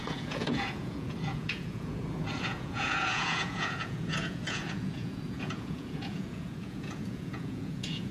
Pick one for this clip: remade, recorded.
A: remade